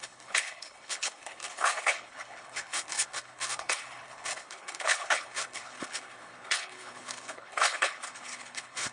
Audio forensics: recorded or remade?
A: remade